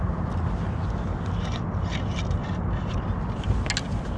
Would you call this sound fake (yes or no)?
no